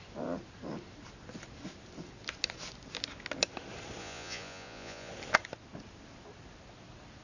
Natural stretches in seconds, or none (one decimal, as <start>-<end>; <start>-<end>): 0.0-4.0; 5.1-7.2

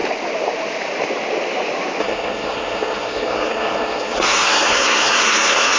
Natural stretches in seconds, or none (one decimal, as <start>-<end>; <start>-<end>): 0.0-2.0

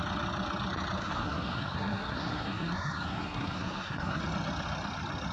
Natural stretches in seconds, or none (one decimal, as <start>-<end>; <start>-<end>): 0.0-1.0; 4.2-5.3

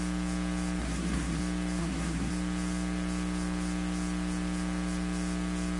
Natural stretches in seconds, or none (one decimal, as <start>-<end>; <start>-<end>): 0.0-0.8; 1.4-1.8; 2.3-5.8

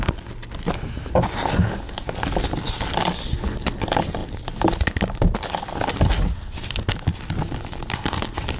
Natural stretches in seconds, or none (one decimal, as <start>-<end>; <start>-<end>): 0.0-8.6

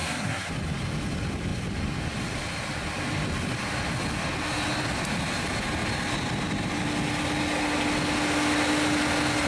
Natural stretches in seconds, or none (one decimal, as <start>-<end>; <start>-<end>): 0.5-9.5

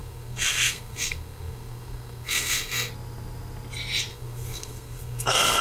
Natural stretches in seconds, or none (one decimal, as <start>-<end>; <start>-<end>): 2.9-4.1

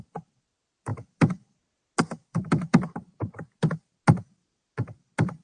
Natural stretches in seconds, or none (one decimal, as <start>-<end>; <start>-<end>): 0.0-5.4